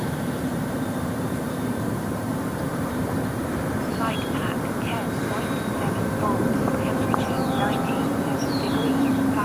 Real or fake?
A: fake